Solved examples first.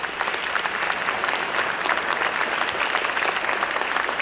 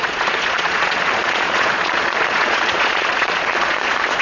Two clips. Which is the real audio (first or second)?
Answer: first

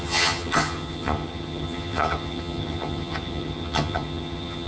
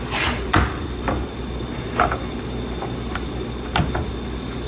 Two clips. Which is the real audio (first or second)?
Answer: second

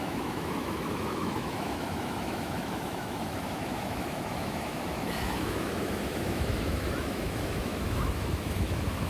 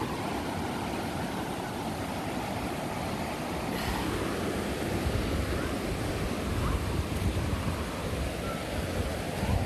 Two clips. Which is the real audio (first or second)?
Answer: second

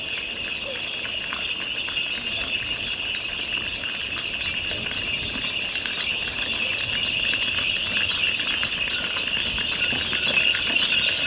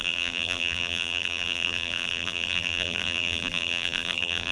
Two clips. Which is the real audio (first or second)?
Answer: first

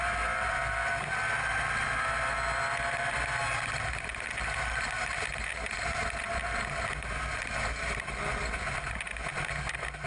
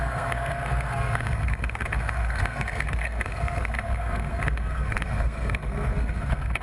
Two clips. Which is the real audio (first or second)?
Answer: first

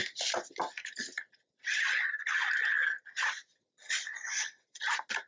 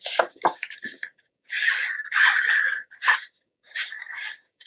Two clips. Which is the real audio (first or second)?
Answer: first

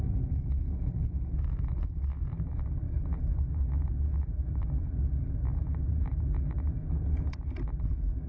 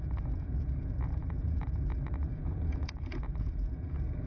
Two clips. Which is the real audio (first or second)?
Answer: first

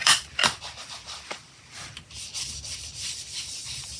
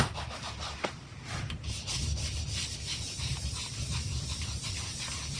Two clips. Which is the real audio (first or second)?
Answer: second